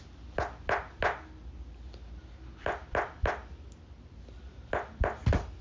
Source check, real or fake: real